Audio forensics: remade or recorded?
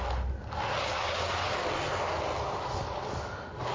recorded